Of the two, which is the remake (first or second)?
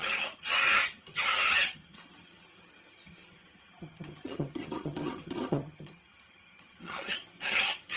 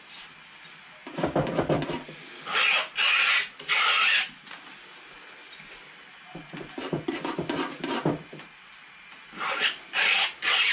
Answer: first